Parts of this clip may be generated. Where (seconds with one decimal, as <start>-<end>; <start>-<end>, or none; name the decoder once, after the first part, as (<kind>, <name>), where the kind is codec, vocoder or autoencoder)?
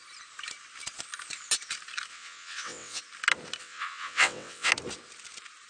2.1-3.0 (vocoder, WaveNeXt); 3.6-4.7